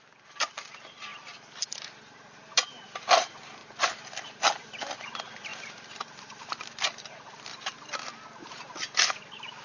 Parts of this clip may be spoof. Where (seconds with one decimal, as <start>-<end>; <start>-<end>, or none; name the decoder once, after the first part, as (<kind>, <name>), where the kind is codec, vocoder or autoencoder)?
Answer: 0.0-7.5 (vocoder, BigVGAN v2); 8.5-9.6